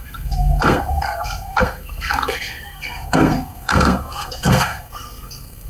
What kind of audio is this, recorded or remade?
remade